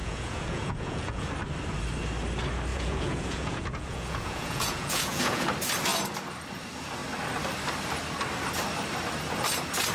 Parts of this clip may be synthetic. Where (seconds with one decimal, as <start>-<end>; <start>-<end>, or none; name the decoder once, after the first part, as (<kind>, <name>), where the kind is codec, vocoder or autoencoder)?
0.0-1.3 (vocoder, Vocos); 2.7-5.4